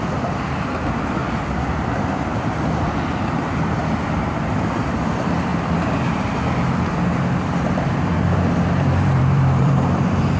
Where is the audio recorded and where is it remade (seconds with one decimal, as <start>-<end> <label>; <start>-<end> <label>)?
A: 0.0-1.2 remade; 1.2-1.7 recorded; 1.7-5.5 remade; 5.5-6.1 recorded; 6.1-10.4 remade